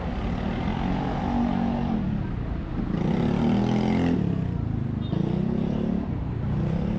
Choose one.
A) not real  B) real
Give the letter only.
B